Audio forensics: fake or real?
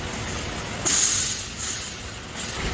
real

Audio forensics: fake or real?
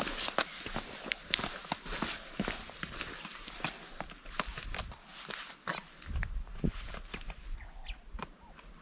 real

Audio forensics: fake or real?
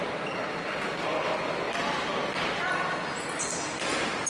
real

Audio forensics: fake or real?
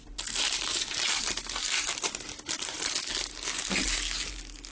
real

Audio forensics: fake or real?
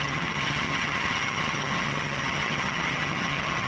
fake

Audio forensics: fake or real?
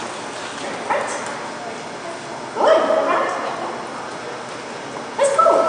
real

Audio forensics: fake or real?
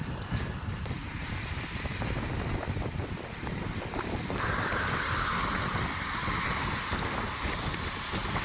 real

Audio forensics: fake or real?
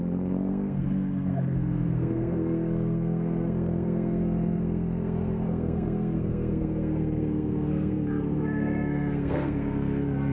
fake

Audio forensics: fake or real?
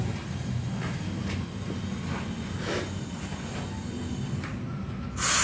real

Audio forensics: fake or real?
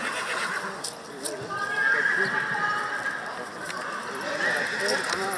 real